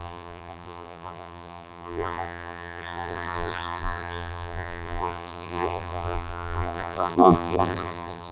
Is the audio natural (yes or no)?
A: no